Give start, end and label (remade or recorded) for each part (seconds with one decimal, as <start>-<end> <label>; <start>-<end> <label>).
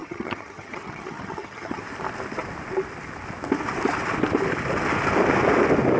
0.0-1.8 remade; 1.8-6.0 recorded